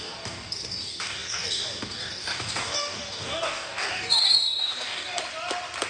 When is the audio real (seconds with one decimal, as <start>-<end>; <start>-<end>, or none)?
5.2-5.9